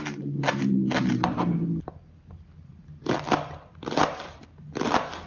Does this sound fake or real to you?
real